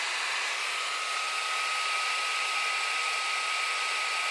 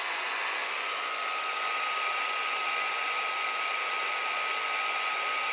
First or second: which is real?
first